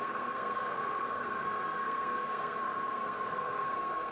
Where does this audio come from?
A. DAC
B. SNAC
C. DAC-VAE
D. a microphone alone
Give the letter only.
B